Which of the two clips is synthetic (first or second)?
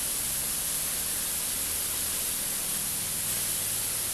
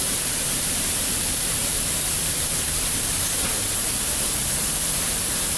second